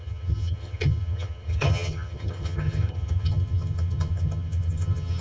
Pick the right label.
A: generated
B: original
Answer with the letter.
A